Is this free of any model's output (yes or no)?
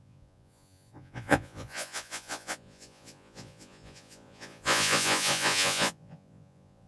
no